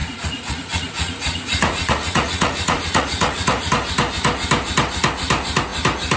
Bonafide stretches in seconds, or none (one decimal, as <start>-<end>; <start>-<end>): 3.7-6.2